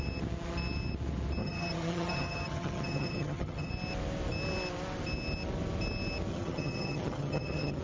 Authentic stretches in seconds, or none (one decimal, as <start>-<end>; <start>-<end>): 0.0-1.4; 3.7-6.3